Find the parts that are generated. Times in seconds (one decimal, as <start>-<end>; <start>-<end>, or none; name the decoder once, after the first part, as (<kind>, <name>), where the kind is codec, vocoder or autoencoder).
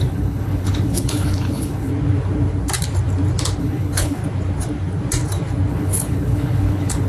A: 0.0-1.9 (codec, HILCodec); 3.6-4.2; 5.7-7.1